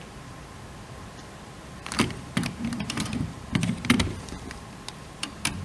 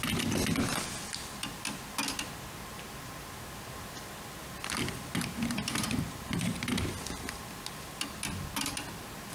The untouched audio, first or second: second